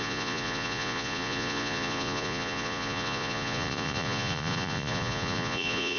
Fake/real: fake